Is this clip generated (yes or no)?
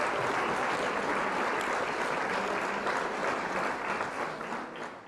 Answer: no